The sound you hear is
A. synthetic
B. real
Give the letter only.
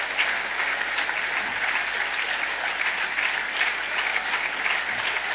B